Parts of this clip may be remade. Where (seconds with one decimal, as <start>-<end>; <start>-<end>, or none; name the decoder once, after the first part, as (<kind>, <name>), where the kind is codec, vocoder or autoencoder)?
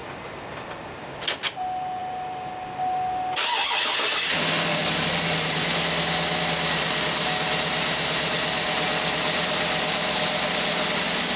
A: none